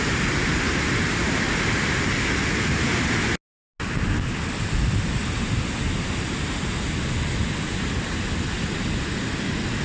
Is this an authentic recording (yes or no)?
yes